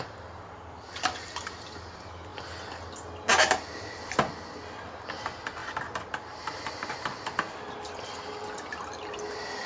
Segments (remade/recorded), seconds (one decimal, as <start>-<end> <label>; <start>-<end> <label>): 0.0-9.7 recorded